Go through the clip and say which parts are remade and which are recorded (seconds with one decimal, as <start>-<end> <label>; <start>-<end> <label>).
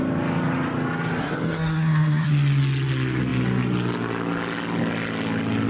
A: 0.0-1.2 recorded; 1.2-2.3 remade; 2.3-5.7 recorded